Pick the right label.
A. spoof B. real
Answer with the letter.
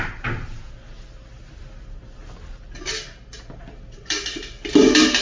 B